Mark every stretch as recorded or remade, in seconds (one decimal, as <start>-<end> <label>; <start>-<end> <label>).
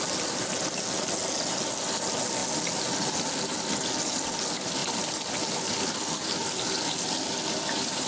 0.0-4.8 recorded; 4.8-5.7 remade; 5.7-8.1 recorded